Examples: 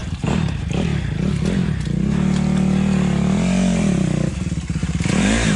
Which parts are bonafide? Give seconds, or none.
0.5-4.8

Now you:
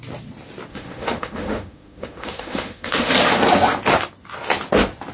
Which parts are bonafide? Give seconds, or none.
0.0-0.7; 3.1-5.1

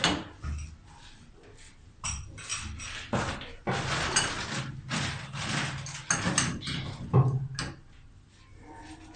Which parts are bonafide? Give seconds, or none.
0.0-9.2

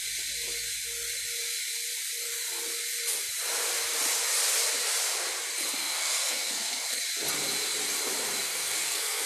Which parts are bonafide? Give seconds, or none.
0.0-5.8; 7.0-8.4

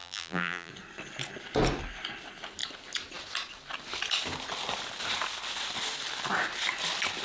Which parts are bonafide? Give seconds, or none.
0.7-7.2

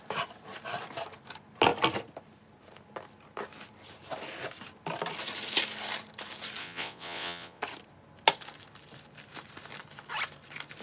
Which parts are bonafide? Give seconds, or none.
0.0-6.6; 7.6-10.8